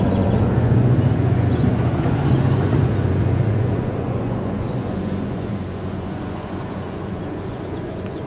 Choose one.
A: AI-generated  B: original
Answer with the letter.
A